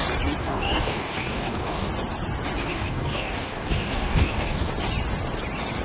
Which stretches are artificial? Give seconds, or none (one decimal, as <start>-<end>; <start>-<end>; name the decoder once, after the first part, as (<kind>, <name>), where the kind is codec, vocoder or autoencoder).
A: 0.4-1.9 (codec, DAC); 2.6-4.7